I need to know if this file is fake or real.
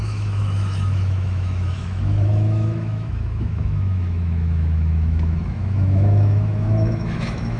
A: fake